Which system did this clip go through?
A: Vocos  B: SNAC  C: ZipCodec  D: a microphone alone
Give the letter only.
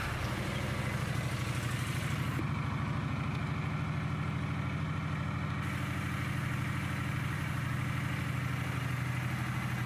D